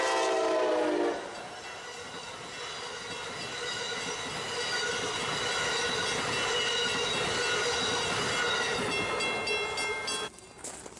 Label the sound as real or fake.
real